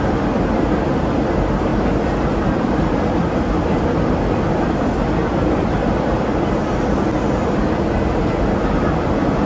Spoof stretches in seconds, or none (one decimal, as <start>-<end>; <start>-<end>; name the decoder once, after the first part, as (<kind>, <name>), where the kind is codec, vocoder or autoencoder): 1.7-6.4 (vocoder, BigVGAN v2)